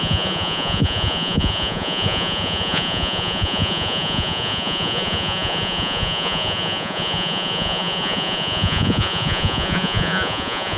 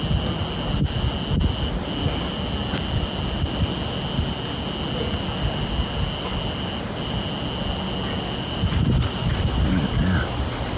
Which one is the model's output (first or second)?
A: first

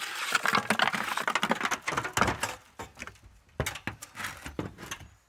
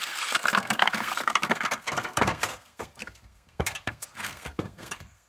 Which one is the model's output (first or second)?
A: second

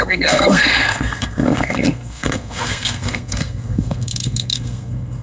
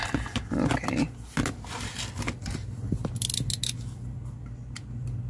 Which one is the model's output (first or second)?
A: first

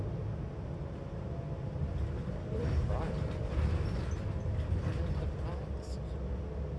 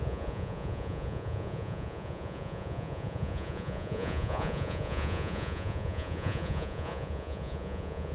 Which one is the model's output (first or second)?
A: second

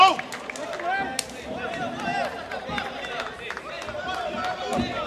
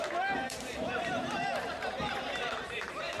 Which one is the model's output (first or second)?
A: second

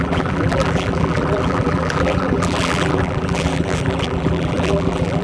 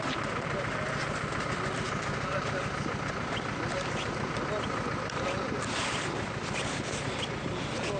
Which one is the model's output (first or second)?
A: first